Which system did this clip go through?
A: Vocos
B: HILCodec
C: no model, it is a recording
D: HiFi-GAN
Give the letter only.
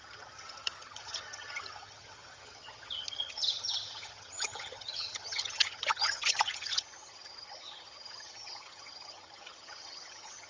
D